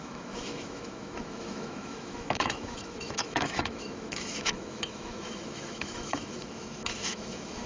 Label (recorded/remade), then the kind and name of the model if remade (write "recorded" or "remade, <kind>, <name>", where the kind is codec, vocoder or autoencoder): remade, autoencoder, DAC-VAE